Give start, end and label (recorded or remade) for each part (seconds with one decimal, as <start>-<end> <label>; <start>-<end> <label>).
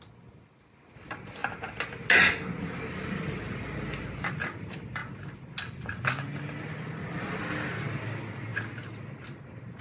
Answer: 0.0-9.8 recorded